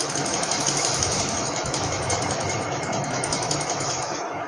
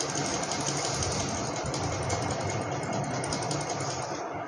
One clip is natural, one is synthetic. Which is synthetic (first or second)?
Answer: first